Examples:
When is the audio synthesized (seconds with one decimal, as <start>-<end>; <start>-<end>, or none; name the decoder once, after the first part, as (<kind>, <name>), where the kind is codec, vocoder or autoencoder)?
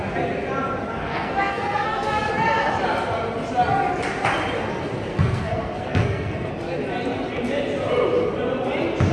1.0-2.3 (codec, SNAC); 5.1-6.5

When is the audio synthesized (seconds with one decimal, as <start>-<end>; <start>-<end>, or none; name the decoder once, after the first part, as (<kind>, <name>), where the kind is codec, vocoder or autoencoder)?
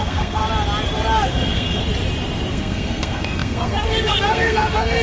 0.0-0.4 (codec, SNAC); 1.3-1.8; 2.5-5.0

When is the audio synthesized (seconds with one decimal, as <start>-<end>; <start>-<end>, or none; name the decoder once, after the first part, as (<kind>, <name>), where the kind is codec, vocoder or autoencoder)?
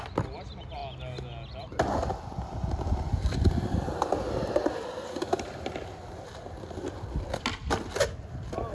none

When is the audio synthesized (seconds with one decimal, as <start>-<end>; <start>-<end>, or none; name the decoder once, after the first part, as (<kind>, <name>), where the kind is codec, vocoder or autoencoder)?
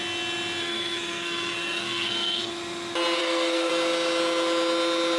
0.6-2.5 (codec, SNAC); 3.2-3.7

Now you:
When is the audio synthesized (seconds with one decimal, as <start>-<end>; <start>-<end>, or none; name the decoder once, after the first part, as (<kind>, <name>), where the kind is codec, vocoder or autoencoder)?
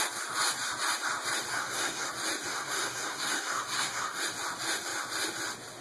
1.5-2.1 (codec, SNAC); 2.5-4.2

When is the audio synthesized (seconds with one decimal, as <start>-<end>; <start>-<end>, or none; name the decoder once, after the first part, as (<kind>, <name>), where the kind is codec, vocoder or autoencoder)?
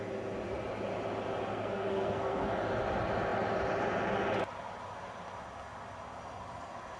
1.5-2.5 (codec, SNAC)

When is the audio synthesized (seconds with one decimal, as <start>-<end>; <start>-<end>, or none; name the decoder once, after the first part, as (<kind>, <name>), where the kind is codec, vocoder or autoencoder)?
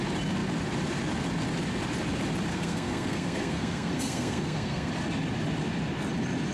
2.5-4.9 (codec, SNAC)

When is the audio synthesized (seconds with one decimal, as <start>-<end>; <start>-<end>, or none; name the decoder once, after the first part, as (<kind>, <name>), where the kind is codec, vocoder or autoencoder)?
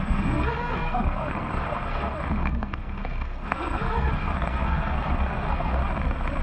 0.0-5.8 (codec, SNAC)